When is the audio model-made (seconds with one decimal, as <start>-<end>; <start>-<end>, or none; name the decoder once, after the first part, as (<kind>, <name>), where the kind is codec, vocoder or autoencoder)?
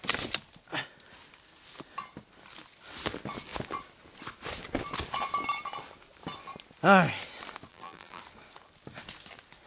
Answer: 7.7-8.2 (vocoder, BigVGAN v2)